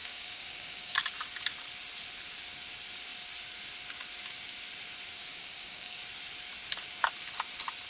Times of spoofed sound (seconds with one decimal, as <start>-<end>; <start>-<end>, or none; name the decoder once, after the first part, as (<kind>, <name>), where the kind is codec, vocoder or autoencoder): 0.0-1.0 (codec, DAC); 5.2-6.0